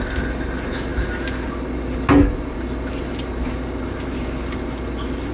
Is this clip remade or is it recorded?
recorded